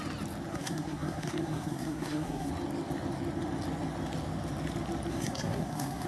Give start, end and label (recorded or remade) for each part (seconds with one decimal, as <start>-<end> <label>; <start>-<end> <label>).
0.0-0.5 recorded; 0.5-2.5 remade; 2.5-5.1 recorded; 5.1-6.1 remade